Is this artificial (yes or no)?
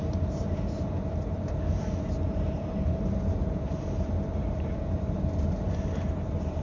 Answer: yes